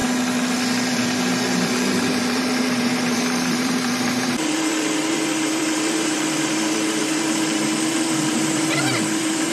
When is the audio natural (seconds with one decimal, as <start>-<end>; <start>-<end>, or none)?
0.0-0.9